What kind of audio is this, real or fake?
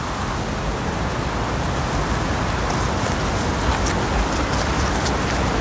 real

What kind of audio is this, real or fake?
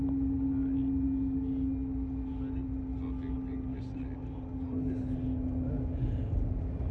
real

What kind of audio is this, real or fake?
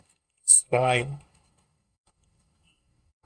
fake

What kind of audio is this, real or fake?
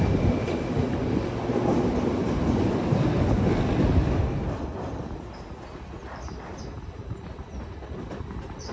real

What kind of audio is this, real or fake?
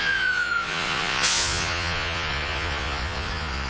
fake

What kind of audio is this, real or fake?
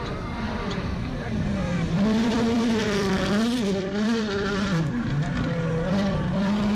fake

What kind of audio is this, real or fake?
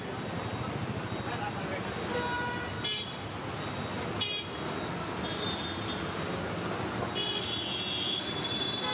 real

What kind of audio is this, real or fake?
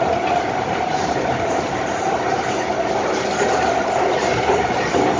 real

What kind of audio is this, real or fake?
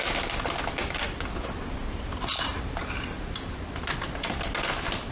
real